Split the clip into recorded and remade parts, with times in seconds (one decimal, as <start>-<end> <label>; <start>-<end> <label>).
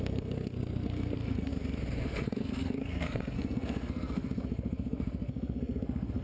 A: 0.0-1.5 remade; 1.5-2.0 recorded; 2.0-6.2 remade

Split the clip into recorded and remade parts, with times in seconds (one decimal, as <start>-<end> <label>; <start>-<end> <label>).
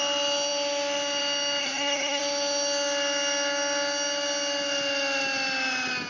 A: 0.0-1.6 recorded; 1.6-2.2 remade; 2.2-6.1 recorded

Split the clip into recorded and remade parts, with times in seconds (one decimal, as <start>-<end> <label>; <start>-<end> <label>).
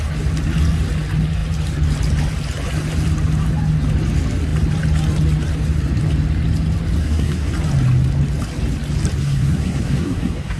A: 0.0-7.0 recorded; 7.0-7.5 remade; 7.5-9.2 recorded; 9.2-10.6 remade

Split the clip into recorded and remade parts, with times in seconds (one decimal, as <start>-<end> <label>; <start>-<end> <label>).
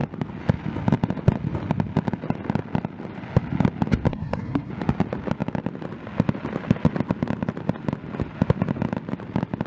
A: 0.0-4.1 recorded; 4.1-4.7 remade; 4.7-9.7 recorded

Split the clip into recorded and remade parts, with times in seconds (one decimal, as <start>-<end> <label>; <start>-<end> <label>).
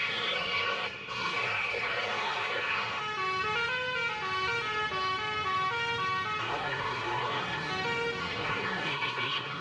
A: 0.0-3.0 remade; 3.0-6.4 recorded; 6.4-7.7 remade; 7.7-8.2 recorded; 8.2-9.6 remade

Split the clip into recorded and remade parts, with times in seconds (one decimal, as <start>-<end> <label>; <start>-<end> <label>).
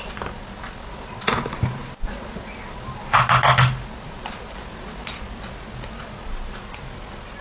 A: 0.0-7.4 recorded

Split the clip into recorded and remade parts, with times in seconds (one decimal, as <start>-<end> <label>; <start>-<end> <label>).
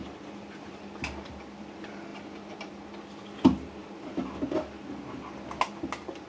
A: 0.0-6.3 recorded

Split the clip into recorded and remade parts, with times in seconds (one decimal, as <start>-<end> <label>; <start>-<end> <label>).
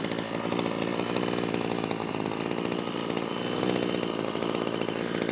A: 0.0-5.3 recorded